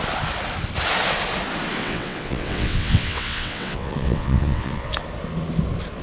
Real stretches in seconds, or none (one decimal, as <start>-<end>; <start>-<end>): 0.0-1.8; 4.9-6.0